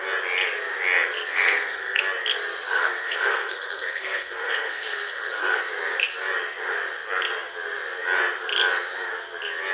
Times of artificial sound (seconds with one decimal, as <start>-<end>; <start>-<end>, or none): 1.3-2.0; 2.7-5.6